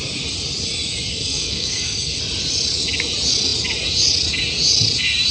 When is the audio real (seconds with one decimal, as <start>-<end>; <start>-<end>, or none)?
0.0-1.1; 2.2-5.3